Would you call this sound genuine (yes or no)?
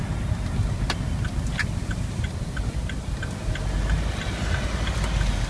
yes